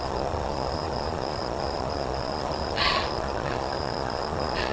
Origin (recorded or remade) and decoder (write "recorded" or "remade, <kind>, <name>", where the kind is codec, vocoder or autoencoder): remade, vocoder, Vocos